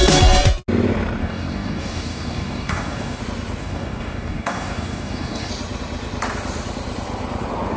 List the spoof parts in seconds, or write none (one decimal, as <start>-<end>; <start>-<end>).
1.2-3.2; 3.6-5.5